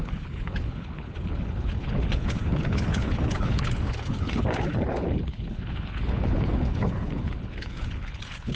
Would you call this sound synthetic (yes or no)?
yes